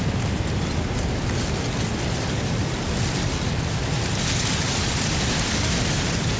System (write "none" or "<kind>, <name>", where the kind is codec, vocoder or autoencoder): none